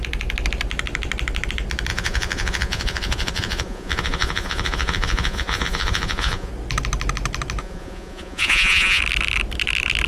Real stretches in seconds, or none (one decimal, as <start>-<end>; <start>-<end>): 0.0-1.9; 6.5-7.6; 9.0-10.1